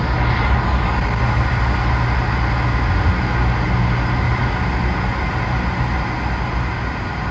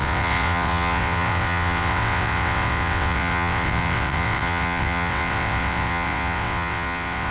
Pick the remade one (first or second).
second